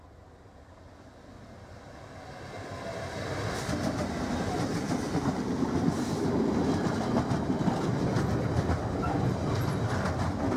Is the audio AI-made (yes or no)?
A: no